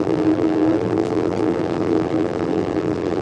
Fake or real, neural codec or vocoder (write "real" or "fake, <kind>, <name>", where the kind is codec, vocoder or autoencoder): fake, vocoder, BigVGAN v2